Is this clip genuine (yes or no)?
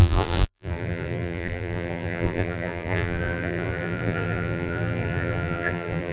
no